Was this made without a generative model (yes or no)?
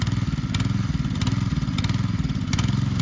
yes